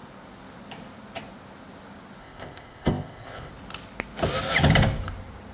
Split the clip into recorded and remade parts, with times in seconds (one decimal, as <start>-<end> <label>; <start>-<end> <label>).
0.0-2.2 recorded; 2.2-3.5 remade; 3.5-5.5 recorded